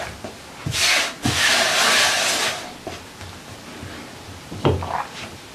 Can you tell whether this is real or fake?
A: real